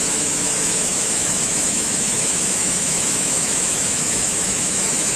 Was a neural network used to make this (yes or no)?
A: yes